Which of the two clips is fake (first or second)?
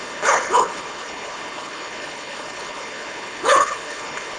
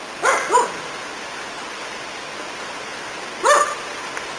first